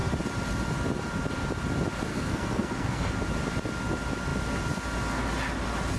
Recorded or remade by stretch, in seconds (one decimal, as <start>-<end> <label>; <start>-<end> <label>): 0.0-2.1 recorded; 2.1-3.1 remade; 3.1-6.0 recorded

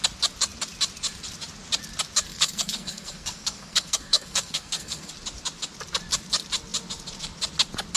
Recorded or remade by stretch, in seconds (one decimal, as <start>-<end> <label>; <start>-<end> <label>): 0.0-2.3 recorded; 2.3-5.1 remade; 5.1-8.0 recorded

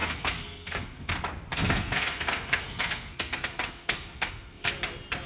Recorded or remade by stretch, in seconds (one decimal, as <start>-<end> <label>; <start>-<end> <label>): 0.0-1.1 remade; 1.1-1.5 recorded; 1.5-4.7 remade; 4.7-5.3 recorded

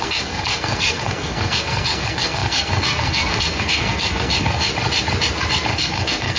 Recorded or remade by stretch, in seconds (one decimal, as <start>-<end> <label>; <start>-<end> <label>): 0.0-4.7 remade; 4.7-5.7 recorded; 5.7-6.4 remade

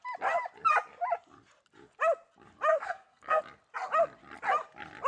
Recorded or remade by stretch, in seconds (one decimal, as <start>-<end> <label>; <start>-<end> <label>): 0.0-2.7 recorded; 2.7-3.4 remade; 3.4-5.1 recorded

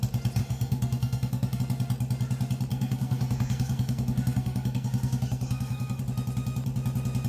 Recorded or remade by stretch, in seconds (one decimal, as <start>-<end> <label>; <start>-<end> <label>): 0.0-0.4 recorded; 0.4-1.6 remade; 1.6-2.7 recorded; 2.7-6.0 remade; 6.0-7.3 recorded

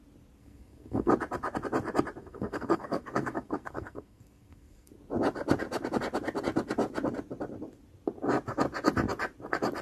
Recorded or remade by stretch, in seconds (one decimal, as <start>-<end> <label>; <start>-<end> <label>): 0.0-0.4 recorded; 0.4-1.1 remade; 1.1-2.2 recorded; 2.2-4.9 remade; 4.9-9.8 recorded